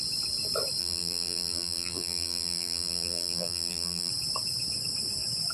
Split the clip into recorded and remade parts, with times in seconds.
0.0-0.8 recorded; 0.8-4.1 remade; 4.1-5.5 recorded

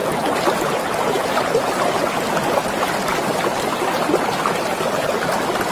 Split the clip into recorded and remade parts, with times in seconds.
0.0-5.7 recorded

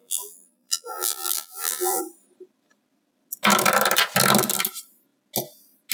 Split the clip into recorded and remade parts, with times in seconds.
0.0-2.0 remade; 2.0-5.9 recorded

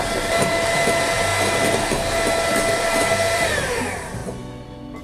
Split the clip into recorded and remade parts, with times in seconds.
0.0-1.3 remade; 1.3-2.7 recorded; 2.7-4.2 remade; 4.2-5.0 recorded

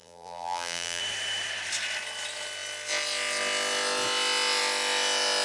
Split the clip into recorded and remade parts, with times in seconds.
0.0-1.0 remade; 1.0-5.4 recorded

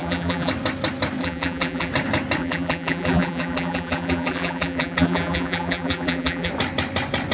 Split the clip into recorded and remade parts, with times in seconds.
0.0-0.5 remade; 0.5-1.2 recorded; 1.2-1.9 remade; 1.9-2.4 recorded; 2.4-6.5 remade; 6.5-7.3 recorded